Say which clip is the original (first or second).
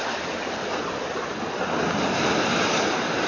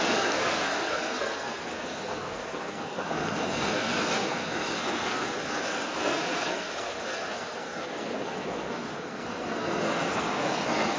first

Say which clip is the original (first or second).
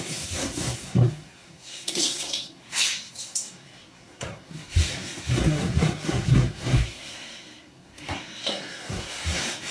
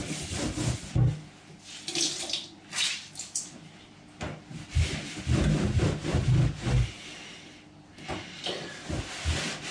second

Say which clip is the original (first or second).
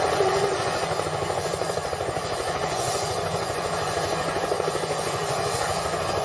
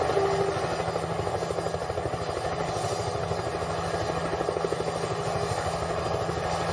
second